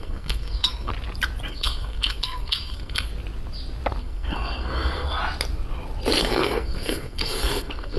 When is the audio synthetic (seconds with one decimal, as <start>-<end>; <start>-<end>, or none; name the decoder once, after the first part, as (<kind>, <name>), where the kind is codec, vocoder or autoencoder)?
0.0-0.9 (codec, SNAC); 1.5-3.1; 4.0-5.2; 6.2-8.0